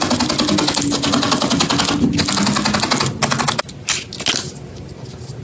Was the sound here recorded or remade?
recorded